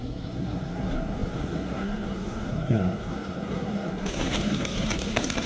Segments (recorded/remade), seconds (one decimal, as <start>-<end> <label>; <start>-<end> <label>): 0.0-5.5 remade